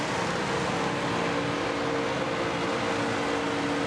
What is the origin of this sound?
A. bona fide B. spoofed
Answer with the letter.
A